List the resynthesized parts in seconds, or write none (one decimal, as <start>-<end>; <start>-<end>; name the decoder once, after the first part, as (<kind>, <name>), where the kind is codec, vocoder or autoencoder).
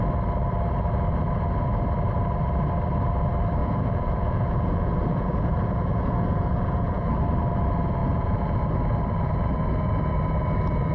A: 3.6-7.2 (vocoder, Vocos); 8.0-8.6